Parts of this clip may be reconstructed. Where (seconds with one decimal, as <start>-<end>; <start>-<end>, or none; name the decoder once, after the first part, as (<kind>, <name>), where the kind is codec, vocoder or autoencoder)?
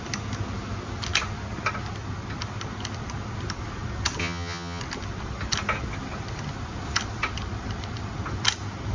4.2-4.8 (vocoder, HiFi-GAN)